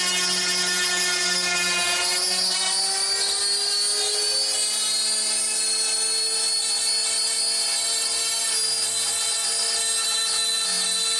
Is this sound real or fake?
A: real